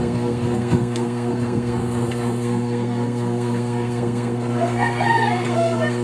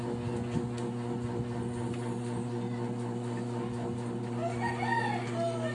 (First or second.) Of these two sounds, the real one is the second